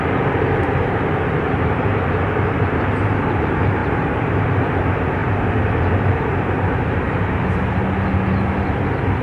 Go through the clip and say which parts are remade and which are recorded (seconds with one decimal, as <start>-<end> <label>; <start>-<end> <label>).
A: 0.0-7.8 remade; 7.8-8.6 recorded; 8.6-9.2 remade